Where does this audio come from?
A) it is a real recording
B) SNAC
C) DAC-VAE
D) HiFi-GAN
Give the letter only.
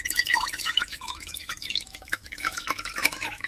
C